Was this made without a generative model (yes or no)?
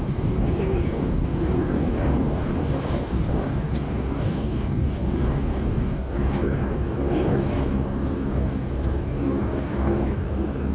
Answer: no